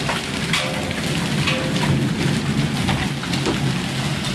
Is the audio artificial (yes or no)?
no